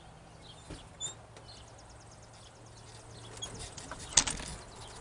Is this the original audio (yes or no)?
yes